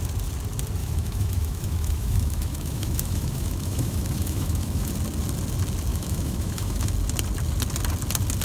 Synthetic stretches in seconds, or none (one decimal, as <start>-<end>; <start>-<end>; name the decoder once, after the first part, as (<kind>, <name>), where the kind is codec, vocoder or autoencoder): 0.8-4.9 (autoencoder, DAC-VAE); 5.9-6.9